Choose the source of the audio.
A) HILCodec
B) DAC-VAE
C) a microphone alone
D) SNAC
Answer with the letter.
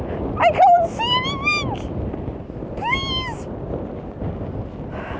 C